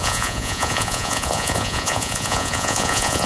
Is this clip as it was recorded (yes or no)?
no